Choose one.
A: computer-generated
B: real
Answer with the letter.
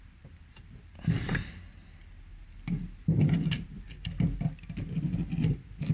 B